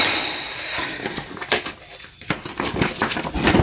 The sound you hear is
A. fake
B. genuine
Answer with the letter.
B